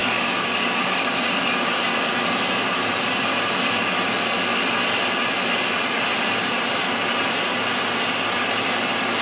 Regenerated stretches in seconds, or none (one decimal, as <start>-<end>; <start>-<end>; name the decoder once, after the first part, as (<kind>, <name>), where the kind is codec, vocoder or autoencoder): 0.0-1.2 (codec, DAC)